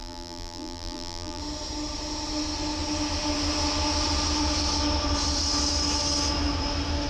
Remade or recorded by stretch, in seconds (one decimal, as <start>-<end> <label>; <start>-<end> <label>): 0.0-1.4 remade; 1.4-7.1 recorded